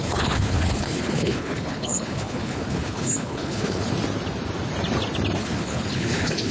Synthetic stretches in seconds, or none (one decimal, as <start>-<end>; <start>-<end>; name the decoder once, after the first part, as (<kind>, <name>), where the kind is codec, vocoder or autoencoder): 0.0-3.9 (codec, HILCodec); 5.4-6.5